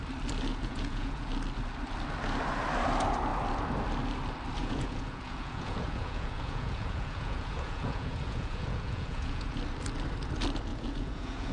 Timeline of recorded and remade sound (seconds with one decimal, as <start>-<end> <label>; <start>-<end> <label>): 0.0-0.5 recorded; 0.5-1.3 remade; 1.3-4.6 recorded; 4.6-9.6 remade; 9.6-10.7 recorded; 10.7-11.5 remade